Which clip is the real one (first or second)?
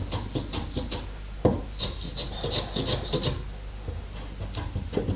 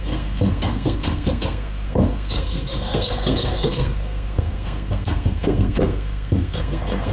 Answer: first